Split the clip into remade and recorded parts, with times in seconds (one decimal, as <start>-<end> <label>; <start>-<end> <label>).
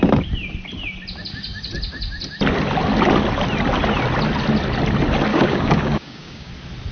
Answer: 0.0-5.3 recorded; 5.3-6.5 remade; 6.5-6.9 recorded